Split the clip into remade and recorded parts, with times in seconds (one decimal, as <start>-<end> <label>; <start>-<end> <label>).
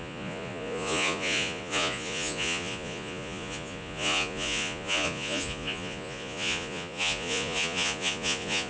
0.0-8.7 remade